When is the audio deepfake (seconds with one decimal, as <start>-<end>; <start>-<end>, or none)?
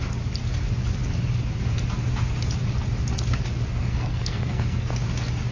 3.7-4.9